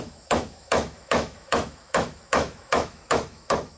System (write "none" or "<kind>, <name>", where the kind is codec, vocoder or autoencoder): autoencoder, DAC-VAE